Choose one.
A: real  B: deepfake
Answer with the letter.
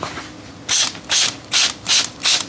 A